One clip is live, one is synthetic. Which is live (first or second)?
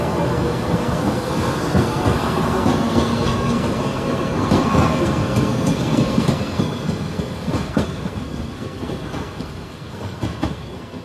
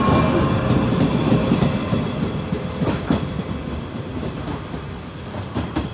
second